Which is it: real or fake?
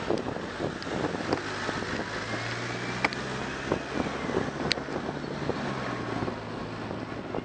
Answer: real